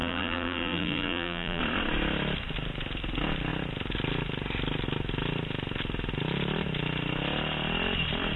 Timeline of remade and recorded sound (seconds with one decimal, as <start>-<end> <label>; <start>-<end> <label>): 0.0-1.6 remade; 1.6-8.4 recorded